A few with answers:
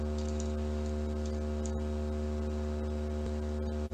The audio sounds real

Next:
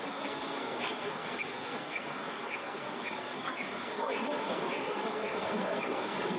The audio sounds fake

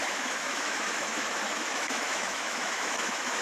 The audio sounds fake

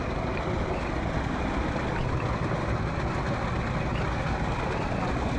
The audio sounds real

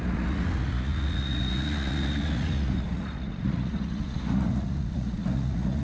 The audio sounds fake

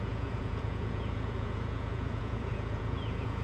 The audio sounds fake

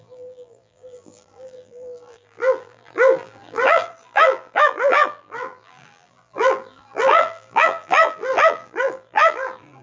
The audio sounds fake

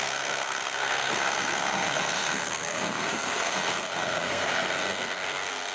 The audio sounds fake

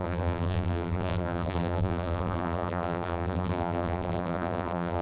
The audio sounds fake